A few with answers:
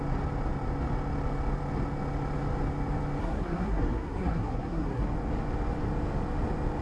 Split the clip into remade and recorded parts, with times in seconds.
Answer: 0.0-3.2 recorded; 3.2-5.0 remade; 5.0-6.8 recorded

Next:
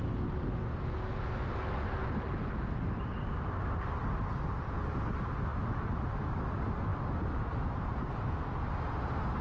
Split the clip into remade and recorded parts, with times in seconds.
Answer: 0.0-9.4 recorded

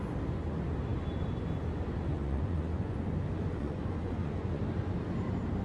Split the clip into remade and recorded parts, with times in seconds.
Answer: 0.0-2.1 recorded; 2.1-3.1 remade; 3.1-3.5 recorded; 3.5-4.6 remade; 4.6-5.6 recorded

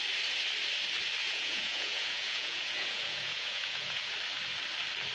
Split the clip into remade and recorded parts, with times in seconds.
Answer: 0.0-1.2 recorded; 1.2-4.1 remade; 4.1-5.1 recorded